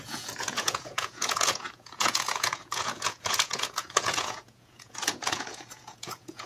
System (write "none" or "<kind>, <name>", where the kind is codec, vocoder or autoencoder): vocoder, Vocos